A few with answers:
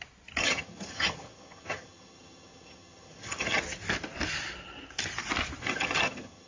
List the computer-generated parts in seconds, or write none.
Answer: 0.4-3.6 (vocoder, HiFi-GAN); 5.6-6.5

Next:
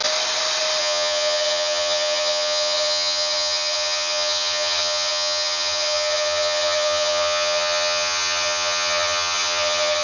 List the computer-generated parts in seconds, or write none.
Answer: 0.8-10.0 (vocoder, HiFi-GAN)

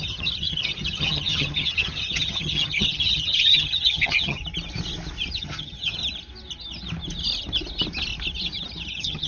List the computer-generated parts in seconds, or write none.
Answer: 0.0-4.4 (vocoder, HiFi-GAN); 5.4-6.0; 8.9-9.3